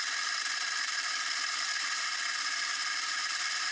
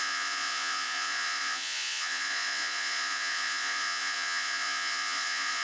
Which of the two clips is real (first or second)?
first